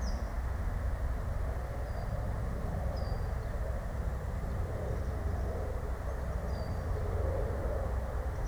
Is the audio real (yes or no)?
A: yes